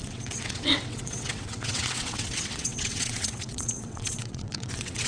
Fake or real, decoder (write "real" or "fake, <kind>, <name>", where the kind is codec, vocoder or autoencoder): fake, vocoder, WaveNeXt